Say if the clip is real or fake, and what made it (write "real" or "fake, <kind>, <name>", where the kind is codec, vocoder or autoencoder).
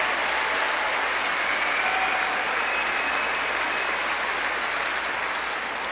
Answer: real